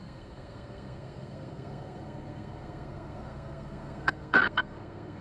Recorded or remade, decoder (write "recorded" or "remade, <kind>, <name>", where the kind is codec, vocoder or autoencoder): remade, codec, SNAC